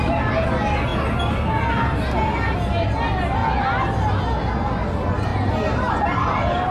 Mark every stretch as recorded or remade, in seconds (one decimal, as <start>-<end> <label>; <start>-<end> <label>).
0.0-6.7 recorded